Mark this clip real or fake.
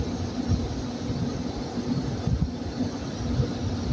real